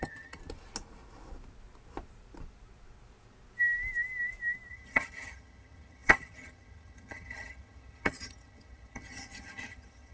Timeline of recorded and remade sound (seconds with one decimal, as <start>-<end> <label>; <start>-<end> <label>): 0.0-0.4 remade; 0.4-4.7 recorded; 4.7-10.1 remade